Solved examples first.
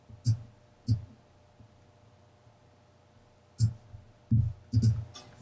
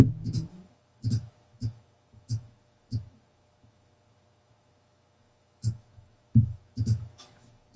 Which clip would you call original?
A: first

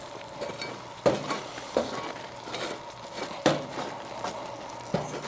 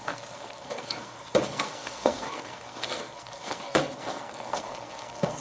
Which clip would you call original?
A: first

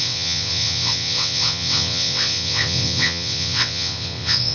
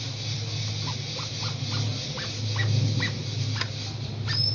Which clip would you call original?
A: second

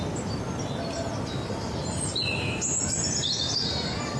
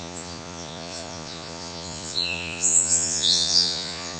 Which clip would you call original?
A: first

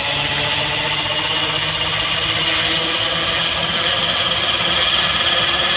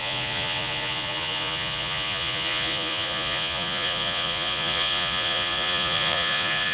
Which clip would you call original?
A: first